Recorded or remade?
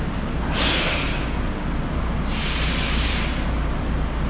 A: recorded